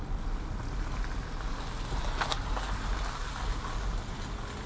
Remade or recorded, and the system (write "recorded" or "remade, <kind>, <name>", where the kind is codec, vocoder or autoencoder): recorded